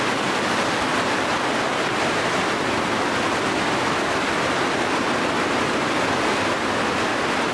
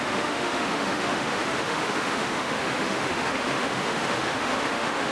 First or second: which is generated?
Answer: second